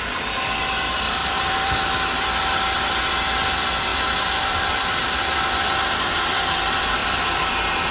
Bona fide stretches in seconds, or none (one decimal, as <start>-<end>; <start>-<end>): 0.0-1.2; 1.8-3.9; 6.4-7.0; 7.5-7.9